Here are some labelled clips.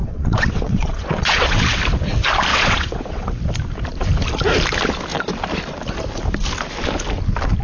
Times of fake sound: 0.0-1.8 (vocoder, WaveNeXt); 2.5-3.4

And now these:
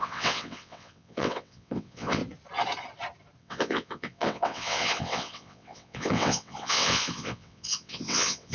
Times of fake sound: 0.0-2.2 (vocoder, WaveNeXt); 3.4-8.5